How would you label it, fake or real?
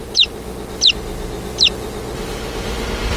real